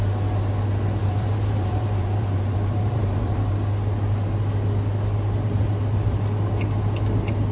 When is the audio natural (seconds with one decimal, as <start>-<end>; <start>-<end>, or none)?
0.0-1.0; 3.5-7.5